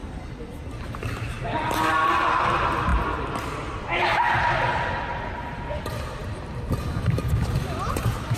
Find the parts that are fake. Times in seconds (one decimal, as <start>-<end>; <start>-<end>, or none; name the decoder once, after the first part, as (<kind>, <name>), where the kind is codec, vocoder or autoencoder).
none